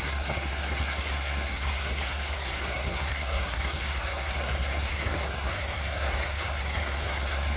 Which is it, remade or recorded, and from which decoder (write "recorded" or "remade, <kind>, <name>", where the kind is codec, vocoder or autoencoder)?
remade, codec, SNAC